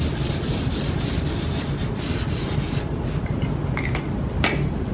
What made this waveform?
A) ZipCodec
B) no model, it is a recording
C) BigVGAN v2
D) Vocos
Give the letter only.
B